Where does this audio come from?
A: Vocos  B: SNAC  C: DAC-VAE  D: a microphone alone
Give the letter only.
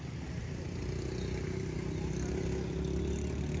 D